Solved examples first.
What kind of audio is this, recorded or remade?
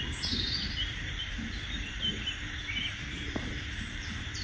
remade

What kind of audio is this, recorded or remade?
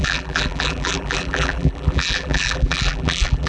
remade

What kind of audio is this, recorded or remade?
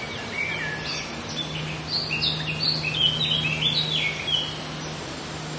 recorded